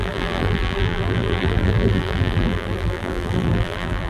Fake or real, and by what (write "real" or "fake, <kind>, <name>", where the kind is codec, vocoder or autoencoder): fake, vocoder, BigVGAN v2